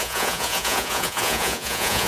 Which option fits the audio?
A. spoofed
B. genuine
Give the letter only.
A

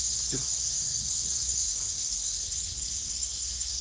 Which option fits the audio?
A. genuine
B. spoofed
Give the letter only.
B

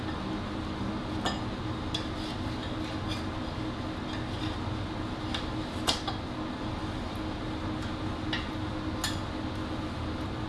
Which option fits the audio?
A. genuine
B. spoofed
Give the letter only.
A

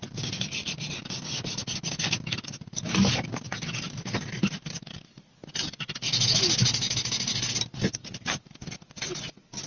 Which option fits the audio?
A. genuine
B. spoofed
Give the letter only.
A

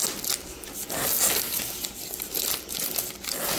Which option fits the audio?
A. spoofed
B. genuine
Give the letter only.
B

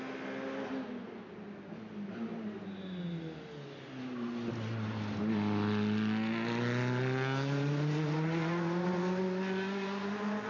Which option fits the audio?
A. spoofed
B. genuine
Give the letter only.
B